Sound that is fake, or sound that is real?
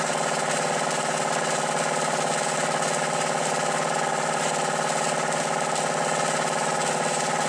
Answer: real